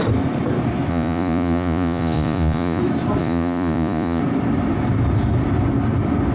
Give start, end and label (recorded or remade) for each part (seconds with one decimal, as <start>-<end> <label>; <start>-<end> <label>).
0.0-0.9 recorded; 0.9-2.8 remade; 2.8-3.2 recorded; 3.2-4.2 remade; 4.2-6.3 recorded